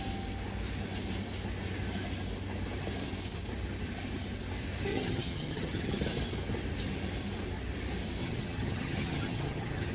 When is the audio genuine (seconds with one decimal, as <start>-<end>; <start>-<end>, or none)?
0.0-4.9; 6.0-8.2